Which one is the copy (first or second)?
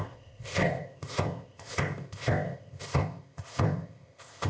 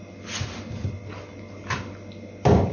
first